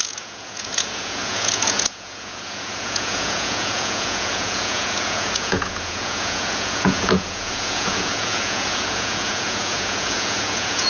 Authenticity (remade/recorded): remade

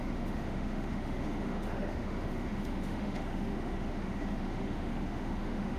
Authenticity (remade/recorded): remade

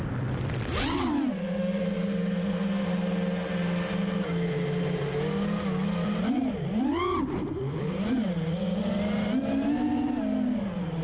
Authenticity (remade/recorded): recorded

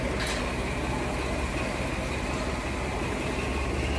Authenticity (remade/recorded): recorded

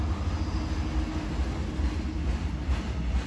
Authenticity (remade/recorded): recorded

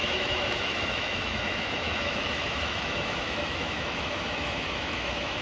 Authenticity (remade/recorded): remade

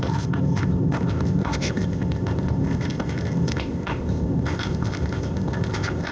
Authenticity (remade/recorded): remade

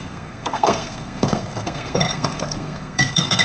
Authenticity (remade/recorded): remade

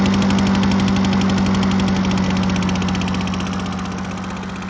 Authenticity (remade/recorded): recorded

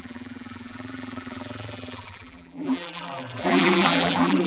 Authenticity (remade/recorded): remade